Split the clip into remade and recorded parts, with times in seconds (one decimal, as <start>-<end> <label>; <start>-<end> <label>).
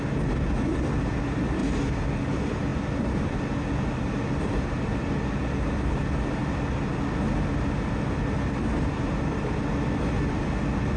0.0-11.0 recorded